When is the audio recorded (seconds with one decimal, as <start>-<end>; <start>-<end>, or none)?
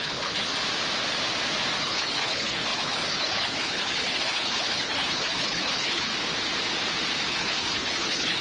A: 0.5-1.8; 6.1-7.3